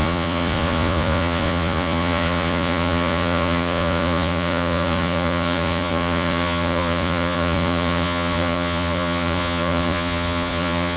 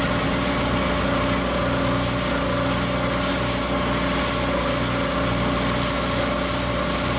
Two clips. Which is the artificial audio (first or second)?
first